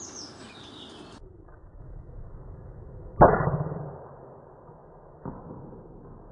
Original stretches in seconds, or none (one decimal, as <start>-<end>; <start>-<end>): 1.8-3.2; 4.8-6.3